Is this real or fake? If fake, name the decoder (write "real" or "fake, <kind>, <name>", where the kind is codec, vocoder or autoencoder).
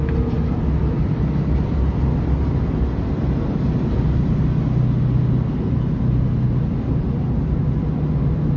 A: real